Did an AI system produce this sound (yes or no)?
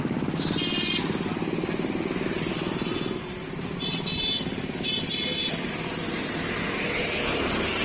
no